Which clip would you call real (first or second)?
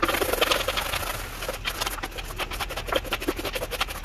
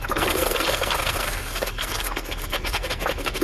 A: first